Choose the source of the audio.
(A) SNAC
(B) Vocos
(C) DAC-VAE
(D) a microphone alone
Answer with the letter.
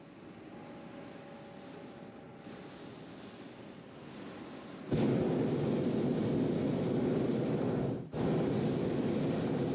D